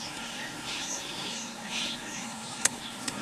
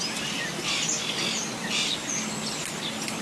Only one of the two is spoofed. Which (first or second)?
first